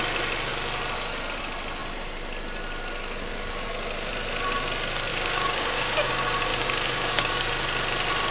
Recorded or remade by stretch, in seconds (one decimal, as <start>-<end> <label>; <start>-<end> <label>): 0.0-5.1 recorded; 5.1-6.1 remade; 6.1-6.5 recorded; 6.5-7.5 remade; 7.5-8.3 recorded